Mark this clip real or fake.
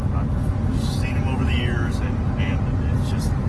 real